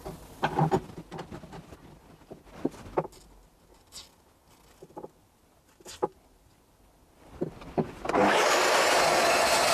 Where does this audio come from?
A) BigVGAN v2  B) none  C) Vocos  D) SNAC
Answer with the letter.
B